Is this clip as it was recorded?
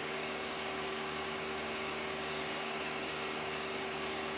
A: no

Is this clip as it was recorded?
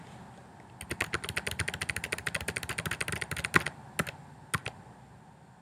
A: yes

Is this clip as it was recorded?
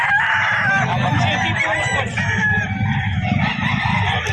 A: yes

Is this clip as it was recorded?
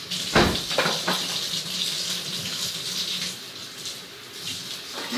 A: yes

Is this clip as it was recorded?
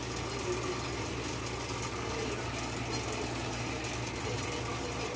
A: yes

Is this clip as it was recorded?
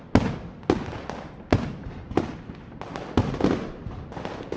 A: yes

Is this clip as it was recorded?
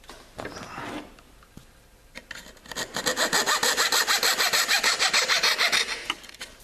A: yes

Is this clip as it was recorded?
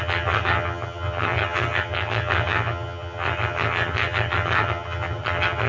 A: no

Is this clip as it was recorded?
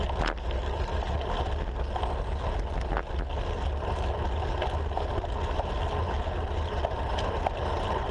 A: yes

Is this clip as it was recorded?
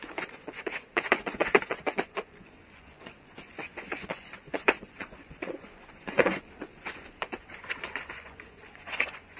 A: no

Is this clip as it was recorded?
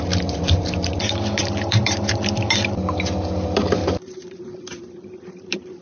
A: no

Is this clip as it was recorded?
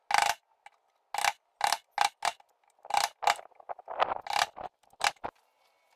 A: yes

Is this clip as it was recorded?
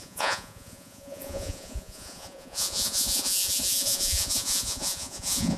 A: no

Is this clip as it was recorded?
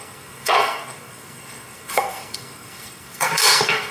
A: no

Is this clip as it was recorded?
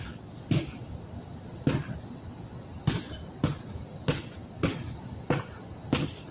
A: yes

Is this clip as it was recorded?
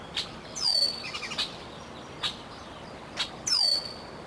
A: yes